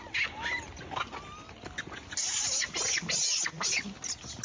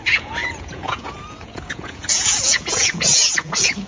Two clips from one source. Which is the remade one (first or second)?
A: second